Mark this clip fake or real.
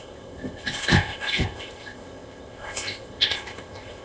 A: fake